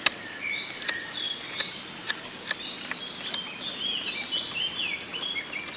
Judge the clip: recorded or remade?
recorded